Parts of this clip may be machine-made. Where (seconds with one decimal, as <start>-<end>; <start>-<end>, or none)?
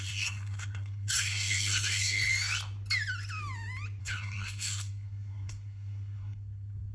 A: 0.0-2.3; 4.0-6.9